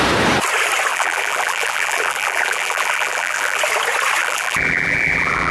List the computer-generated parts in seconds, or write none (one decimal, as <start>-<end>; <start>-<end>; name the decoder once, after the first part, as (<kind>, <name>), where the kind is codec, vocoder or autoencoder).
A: 0.9-3.6 (vocoder, BigVGAN v2); 4.2-5.5